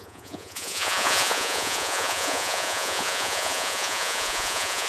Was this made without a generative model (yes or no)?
no